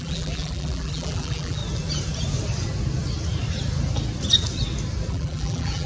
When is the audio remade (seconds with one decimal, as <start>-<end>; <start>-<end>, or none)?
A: 0.0-1.6; 5.1-5.9